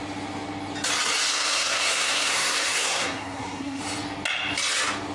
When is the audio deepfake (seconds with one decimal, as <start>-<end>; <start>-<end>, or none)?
1.3-3.8